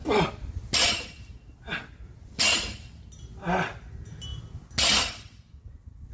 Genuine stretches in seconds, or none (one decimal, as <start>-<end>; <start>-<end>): 0.0-6.1